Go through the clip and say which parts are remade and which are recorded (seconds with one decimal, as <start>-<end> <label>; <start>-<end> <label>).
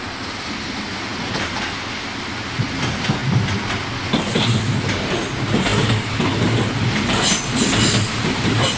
0.0-8.8 recorded